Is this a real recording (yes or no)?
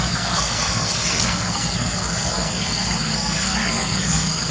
no